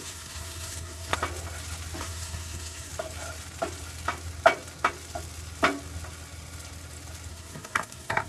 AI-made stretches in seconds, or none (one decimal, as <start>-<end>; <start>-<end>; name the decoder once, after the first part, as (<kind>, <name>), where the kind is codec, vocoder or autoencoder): 0.0-1.1 (codec, SNAC); 2.0-2.9; 7.3-8.3